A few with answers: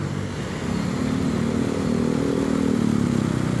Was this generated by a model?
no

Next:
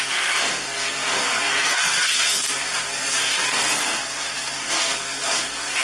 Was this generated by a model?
yes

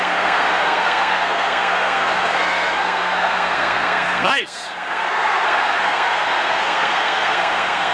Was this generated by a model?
yes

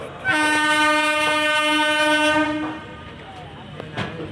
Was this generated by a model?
no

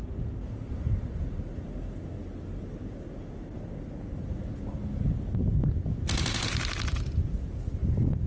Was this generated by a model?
no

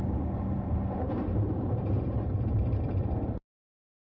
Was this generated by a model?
no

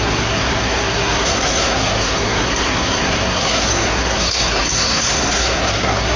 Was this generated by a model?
yes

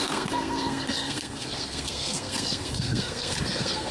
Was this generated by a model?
yes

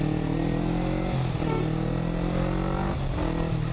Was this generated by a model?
no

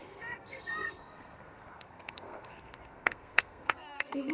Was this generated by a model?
yes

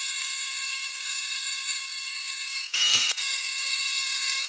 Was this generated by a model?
yes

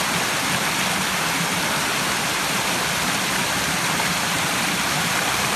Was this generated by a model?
no